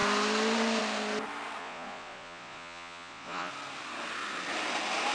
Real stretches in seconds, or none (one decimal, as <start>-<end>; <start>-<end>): 0.0-1.6; 3.5-5.1